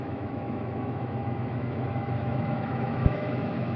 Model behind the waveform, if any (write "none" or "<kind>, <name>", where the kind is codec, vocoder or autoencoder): autoencoder, DAC-VAE